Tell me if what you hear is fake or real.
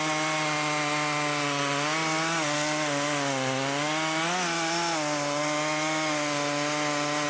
real